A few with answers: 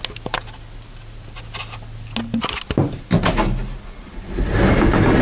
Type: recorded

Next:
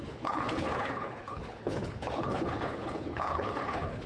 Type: remade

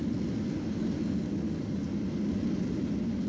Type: recorded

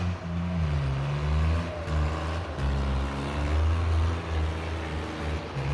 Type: recorded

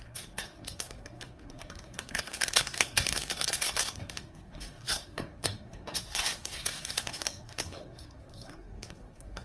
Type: remade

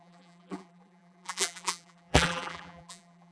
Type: remade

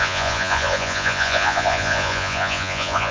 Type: remade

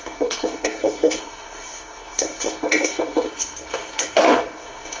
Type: remade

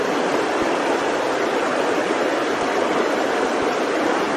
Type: recorded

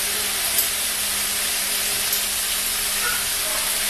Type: recorded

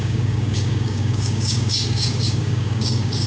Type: remade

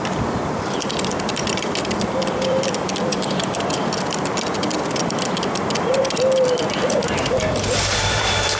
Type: remade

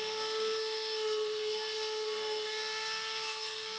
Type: remade